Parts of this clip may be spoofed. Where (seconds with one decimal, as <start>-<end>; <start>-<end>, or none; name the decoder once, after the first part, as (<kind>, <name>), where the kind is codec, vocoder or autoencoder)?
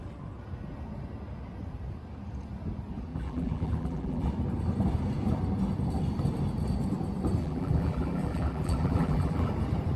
3.1-4.3 (vocoder, BigVGAN v2); 7.4-9.5